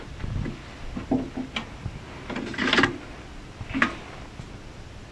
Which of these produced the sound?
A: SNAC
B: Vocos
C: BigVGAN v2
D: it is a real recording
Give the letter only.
D